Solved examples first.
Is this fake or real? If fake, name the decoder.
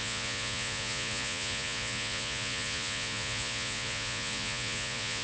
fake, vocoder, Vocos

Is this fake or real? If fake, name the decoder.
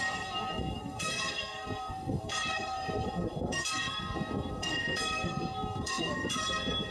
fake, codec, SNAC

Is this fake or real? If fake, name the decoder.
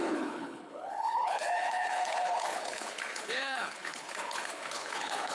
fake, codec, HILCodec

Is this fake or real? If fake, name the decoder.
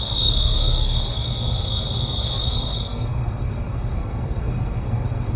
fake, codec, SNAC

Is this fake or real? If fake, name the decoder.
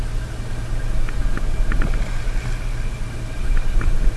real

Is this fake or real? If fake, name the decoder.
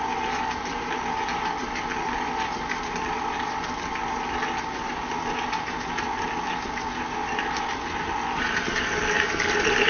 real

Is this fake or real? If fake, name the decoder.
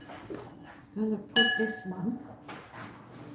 real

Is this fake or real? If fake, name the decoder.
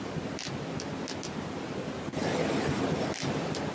real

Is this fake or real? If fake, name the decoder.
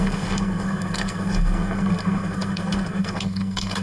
fake, codec, SNAC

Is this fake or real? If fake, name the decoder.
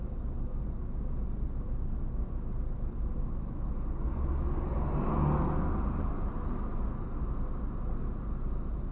real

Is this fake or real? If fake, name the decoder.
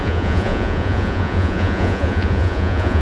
fake, vocoder, Vocos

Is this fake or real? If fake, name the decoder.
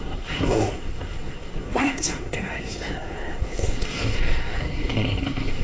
fake, codec, SNAC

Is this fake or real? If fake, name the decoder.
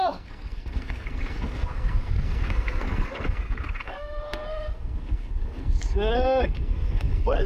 fake, codec, SNAC